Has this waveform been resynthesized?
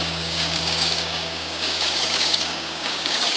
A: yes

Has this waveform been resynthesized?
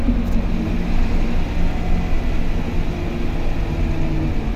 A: no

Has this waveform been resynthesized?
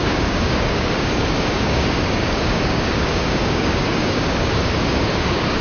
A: yes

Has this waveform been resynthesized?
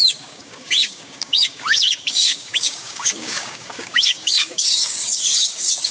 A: yes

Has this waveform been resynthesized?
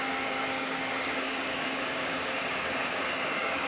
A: yes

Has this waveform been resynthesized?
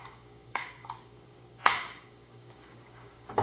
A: yes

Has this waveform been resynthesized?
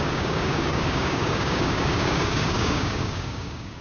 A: yes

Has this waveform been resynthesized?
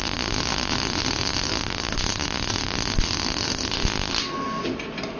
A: no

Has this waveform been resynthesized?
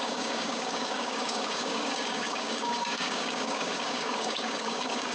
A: yes